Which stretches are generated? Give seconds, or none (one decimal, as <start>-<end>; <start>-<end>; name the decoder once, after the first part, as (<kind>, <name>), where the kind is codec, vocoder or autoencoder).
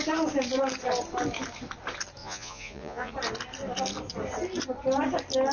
2.2-3.1 (vocoder, Vocos)